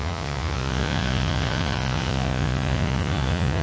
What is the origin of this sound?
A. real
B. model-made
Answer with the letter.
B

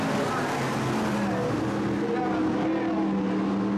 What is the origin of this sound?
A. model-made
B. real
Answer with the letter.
B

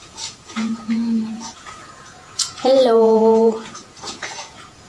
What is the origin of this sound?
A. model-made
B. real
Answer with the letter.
A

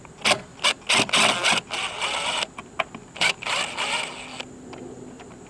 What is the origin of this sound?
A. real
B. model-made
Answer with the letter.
A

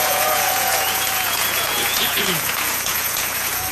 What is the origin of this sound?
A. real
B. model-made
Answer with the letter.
B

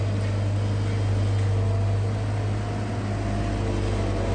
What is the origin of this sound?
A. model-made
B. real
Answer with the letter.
B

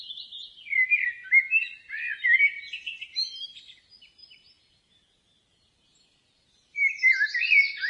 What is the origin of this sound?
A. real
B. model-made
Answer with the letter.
A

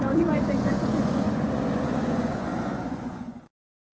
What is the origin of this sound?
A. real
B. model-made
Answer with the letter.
B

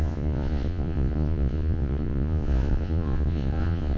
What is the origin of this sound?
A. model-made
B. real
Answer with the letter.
A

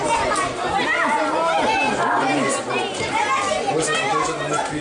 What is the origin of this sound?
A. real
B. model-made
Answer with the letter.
A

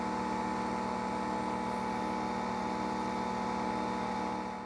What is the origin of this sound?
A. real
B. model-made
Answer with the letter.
A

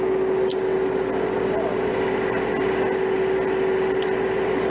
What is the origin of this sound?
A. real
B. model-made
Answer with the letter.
A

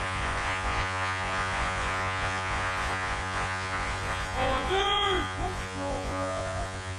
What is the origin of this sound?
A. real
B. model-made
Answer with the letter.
B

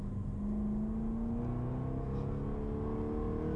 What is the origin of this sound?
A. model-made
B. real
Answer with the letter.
B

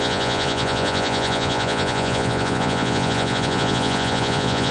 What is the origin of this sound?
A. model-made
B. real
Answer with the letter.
A